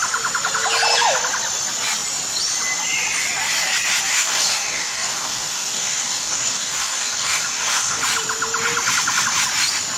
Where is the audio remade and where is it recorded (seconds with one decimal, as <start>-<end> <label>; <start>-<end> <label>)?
0.0-4.1 recorded; 4.1-8.0 remade; 8.0-10.0 recorded

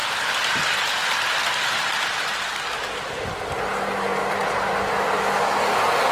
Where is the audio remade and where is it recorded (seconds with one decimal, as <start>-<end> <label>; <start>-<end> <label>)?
0.0-0.6 remade; 0.6-6.1 recorded

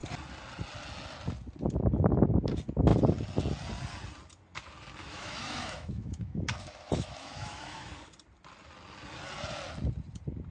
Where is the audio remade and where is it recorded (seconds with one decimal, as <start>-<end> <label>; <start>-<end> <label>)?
0.0-5.0 recorded; 5.0-7.9 remade; 7.9-10.5 recorded

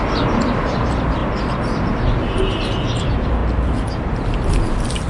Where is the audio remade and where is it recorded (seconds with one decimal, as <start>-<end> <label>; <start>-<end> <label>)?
0.0-1.2 remade; 1.2-3.0 recorded; 3.0-3.4 remade; 3.4-4.0 recorded; 4.0-5.1 remade

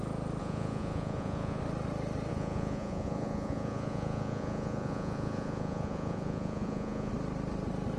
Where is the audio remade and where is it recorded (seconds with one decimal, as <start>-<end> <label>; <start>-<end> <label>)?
0.0-0.4 recorded; 0.4-1.6 remade; 1.6-2.3 recorded; 2.3-7.1 remade; 7.1-8.0 recorded

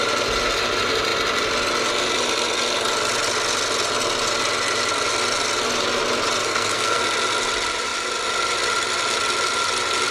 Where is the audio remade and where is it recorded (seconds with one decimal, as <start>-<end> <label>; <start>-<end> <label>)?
0.0-6.4 recorded; 6.4-7.0 remade; 7.0-10.1 recorded

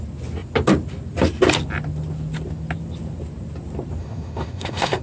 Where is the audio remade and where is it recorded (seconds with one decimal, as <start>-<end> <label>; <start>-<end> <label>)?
0.0-4.0 recorded; 4.0-5.0 remade

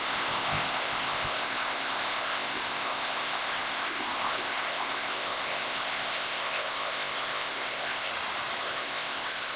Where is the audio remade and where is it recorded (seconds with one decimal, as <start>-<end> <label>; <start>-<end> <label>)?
0.0-8.1 remade; 8.1-8.6 recorded; 8.6-9.6 remade